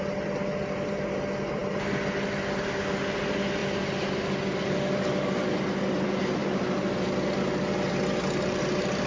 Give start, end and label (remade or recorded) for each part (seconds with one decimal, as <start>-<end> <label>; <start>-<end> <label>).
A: 0.0-9.1 recorded